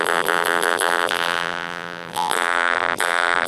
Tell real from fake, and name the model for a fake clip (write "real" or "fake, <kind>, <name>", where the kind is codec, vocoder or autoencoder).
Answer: fake, vocoder, BigVGAN v2